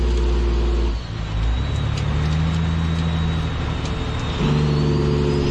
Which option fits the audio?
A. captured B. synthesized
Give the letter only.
A